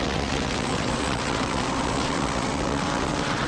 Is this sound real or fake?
fake